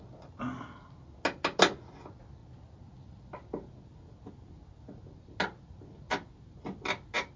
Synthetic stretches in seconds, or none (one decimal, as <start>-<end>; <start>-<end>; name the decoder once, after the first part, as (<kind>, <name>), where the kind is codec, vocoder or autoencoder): none